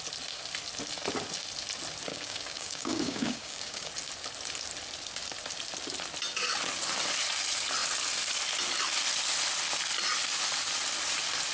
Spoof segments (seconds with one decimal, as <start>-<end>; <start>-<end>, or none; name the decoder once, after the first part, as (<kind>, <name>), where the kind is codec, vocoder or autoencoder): 2.1-3.9 (codec, DAC)